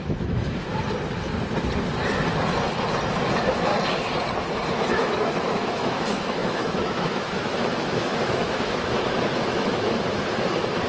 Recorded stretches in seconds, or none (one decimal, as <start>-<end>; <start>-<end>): 0.7-3.1; 3.7-4.7